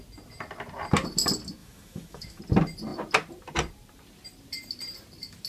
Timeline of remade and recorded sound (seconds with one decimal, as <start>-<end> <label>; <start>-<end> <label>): 0.0-1.6 recorded; 1.6-2.4 remade; 2.4-5.5 recorded